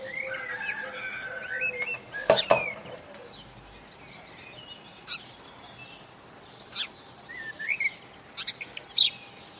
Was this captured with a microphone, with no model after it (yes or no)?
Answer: yes